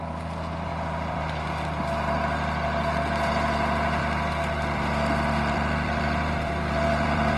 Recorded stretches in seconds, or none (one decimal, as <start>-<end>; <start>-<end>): 0.0-0.7; 1.2-4.0